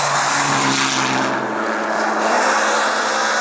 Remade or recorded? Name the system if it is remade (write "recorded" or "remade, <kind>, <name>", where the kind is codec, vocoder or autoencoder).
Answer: recorded